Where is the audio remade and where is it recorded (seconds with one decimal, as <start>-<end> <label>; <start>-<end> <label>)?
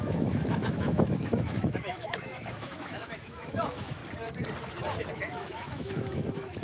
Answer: 0.0-4.0 remade; 4.0-5.1 recorded; 5.1-6.6 remade